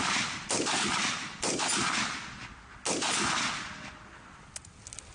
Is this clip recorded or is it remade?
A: recorded